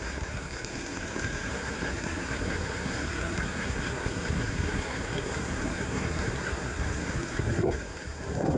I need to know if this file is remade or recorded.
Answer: remade